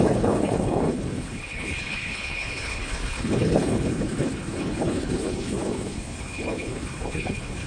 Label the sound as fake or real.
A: fake